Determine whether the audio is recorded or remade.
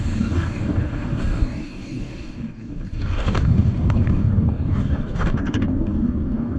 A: remade